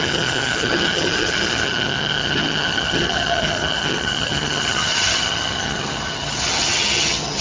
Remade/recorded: remade